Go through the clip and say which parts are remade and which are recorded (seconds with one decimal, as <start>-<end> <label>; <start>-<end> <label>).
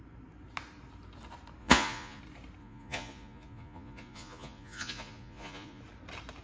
0.0-1.6 recorded; 1.6-2.2 remade; 2.2-2.6 recorded; 2.6-5.8 remade; 5.8-6.4 recorded